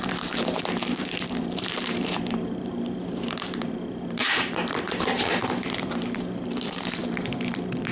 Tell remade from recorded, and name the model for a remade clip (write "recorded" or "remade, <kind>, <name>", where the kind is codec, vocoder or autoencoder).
remade, vocoder, BigVGAN v2